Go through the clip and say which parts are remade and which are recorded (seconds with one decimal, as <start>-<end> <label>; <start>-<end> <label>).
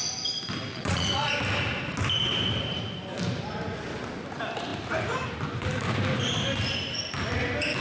0.0-0.7 recorded; 0.7-1.3 remade; 1.3-7.8 recorded